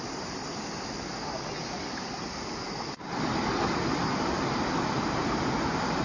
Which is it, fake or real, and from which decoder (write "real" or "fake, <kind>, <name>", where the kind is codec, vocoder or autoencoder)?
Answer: real